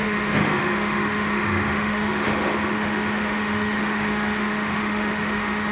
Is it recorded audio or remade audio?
remade